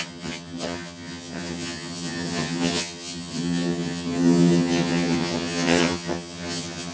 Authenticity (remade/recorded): remade